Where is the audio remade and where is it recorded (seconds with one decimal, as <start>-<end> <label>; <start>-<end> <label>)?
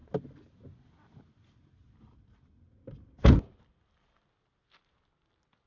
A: 0.0-1.8 recorded; 1.8-4.2 remade; 4.2-5.7 recorded